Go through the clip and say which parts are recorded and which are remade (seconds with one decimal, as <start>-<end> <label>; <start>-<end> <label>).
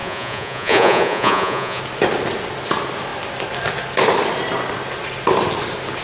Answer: 0.0-1.8 remade; 1.8-6.0 recorded